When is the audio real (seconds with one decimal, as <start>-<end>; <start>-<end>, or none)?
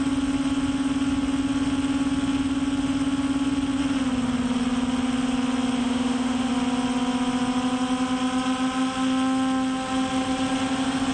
0.0-5.8; 6.5-11.1